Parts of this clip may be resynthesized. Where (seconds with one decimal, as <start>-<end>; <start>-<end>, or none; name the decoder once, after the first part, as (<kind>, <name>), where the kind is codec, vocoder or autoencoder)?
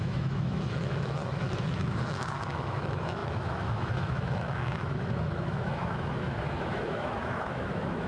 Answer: 0.0-8.1 (autoencoder, DAC-VAE)